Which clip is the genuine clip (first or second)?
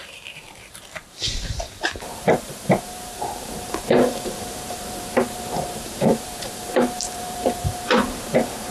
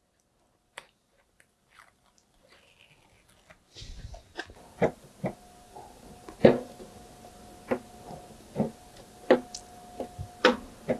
second